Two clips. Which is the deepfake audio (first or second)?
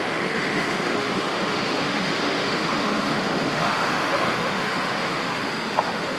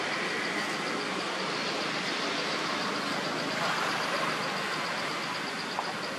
first